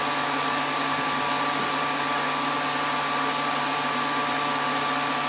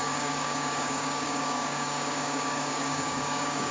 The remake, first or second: second